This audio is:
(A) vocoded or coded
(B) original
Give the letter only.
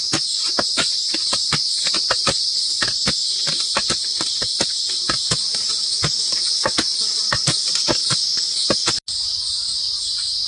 B